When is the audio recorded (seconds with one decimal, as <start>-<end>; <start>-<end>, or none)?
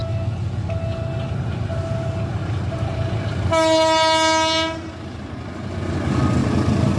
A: 0.0-7.0